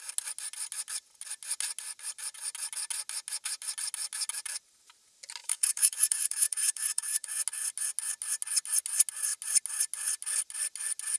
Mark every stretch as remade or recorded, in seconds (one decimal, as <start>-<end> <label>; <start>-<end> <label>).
0.0-5.4 recorded; 5.4-7.3 remade; 7.3-11.2 recorded